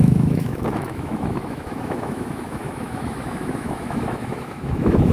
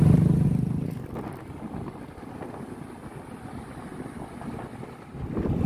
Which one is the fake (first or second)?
first